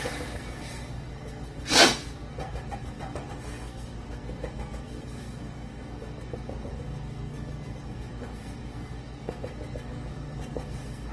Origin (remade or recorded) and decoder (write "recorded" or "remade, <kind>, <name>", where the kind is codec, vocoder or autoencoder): remade, codec, SNAC